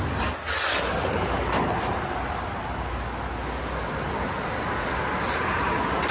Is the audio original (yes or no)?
yes